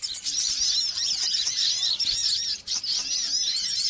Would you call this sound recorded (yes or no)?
no